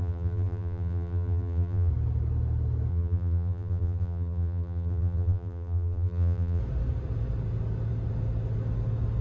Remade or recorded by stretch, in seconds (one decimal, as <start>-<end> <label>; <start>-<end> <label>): 0.0-1.9 remade; 1.9-2.9 recorded; 2.9-6.6 remade; 6.6-9.2 recorded